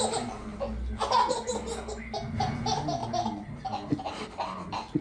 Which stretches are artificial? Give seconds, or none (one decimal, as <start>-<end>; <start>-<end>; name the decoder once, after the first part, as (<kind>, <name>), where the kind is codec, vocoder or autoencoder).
none